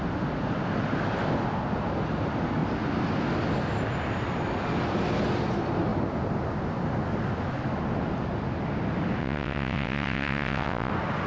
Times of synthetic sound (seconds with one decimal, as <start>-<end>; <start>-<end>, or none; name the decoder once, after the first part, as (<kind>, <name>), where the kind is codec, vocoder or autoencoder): 9.2-10.9 (vocoder, WaveNeXt)

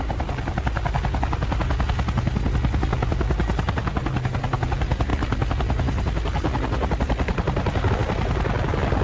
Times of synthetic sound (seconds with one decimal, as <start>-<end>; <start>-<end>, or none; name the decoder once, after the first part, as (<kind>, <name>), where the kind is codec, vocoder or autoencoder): none